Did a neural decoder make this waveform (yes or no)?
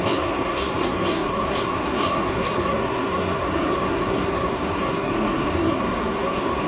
yes